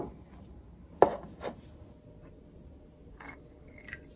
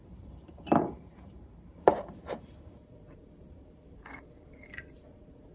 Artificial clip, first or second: second